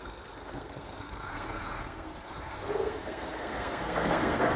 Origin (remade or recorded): remade